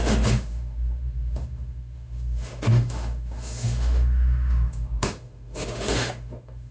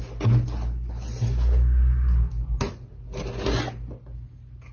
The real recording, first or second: second